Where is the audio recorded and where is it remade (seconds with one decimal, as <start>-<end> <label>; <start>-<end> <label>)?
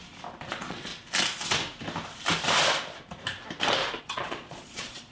0.0-0.5 recorded; 0.5-0.9 remade; 0.9-4.0 recorded; 4.0-5.1 remade